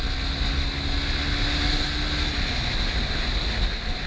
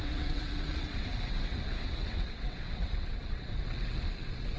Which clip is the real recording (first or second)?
first